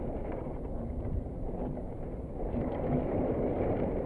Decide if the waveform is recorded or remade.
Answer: recorded